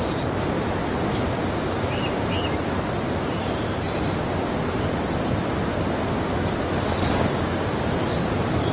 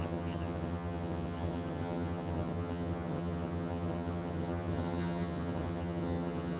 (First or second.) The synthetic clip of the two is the second